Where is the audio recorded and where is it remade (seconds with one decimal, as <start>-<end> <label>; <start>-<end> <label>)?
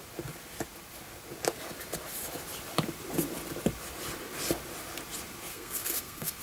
0.0-5.5 recorded; 5.5-6.4 remade